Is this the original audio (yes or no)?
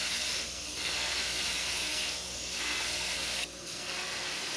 no